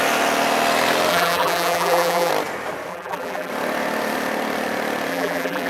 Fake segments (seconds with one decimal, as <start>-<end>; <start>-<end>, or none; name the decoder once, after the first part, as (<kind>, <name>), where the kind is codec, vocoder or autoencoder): 1.1-2.3 (vocoder, BigVGAN v2); 2.9-3.5; 5.1-5.7